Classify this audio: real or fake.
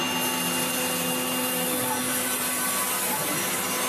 real